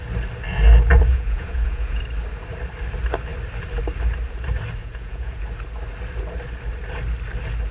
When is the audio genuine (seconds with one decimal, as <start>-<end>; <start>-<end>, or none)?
0.0-0.9; 2.0-4.8; 5.4-7.7